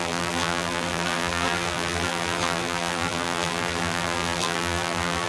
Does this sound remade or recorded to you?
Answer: remade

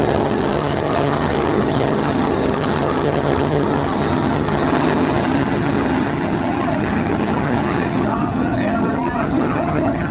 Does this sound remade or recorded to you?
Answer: remade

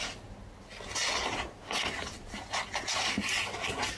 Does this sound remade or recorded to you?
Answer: recorded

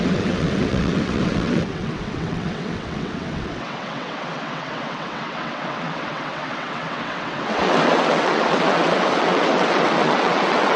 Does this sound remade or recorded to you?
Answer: remade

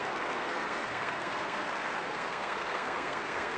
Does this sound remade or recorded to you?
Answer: remade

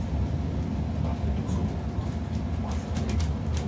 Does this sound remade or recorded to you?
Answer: recorded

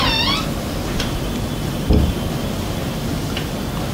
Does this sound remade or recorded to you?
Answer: recorded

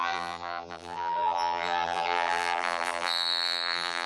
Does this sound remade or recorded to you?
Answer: remade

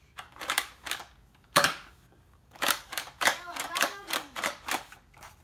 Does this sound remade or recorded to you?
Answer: remade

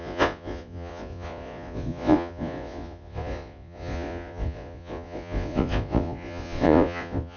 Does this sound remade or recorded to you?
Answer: remade